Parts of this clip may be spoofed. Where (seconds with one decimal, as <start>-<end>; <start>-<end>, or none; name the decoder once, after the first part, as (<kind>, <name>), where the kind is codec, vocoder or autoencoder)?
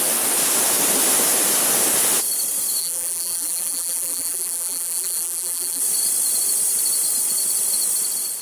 2.8-5.8 (vocoder, BigVGAN v2)